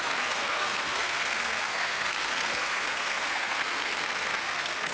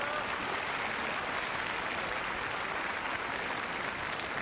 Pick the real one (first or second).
second